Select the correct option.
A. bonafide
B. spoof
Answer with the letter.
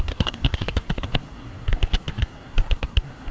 B